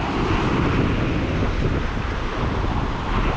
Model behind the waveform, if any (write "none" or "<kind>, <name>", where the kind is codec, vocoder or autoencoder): none